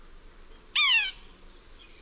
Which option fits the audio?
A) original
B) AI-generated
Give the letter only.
A